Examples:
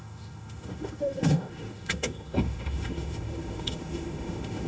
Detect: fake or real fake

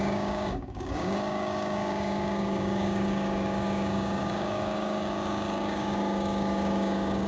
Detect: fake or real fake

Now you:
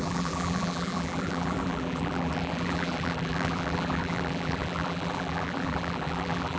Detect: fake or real fake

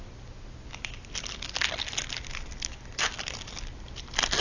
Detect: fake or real real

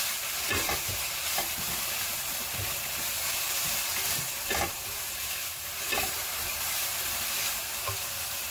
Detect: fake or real fake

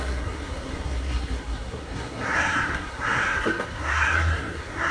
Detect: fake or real fake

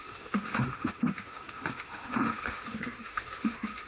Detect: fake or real fake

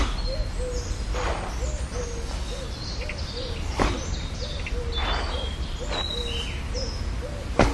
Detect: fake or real real